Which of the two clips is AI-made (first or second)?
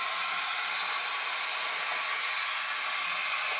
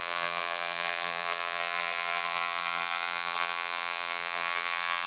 second